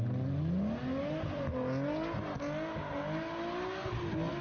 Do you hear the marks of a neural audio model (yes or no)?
no